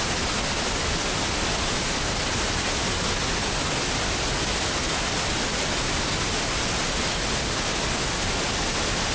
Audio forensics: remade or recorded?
recorded